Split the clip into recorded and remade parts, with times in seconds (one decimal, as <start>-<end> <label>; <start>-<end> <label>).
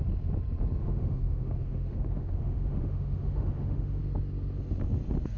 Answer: 0.0-0.8 recorded; 0.8-4.0 remade; 4.0-5.4 recorded